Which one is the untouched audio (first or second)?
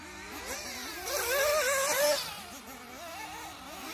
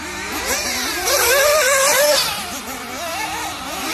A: first